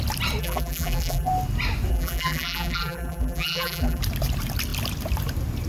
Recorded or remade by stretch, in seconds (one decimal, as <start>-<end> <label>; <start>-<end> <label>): 0.0-0.4 recorded; 0.4-1.3 remade; 1.3-1.9 recorded; 1.9-4.0 remade; 4.0-5.7 recorded